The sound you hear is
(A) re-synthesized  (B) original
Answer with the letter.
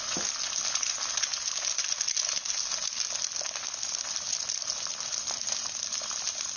B